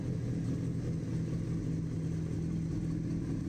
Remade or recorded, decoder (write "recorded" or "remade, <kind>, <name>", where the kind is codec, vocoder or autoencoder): recorded